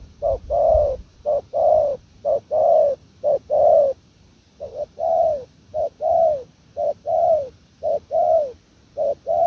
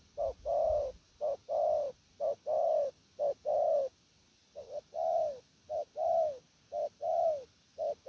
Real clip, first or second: second